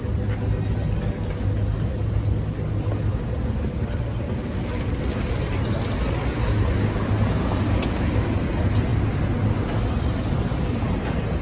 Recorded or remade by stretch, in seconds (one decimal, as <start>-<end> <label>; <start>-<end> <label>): 0.0-11.4 recorded